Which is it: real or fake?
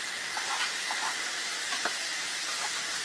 real